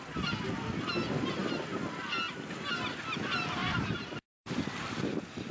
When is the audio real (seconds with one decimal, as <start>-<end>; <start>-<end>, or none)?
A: 0.0-3.6; 4.5-5.5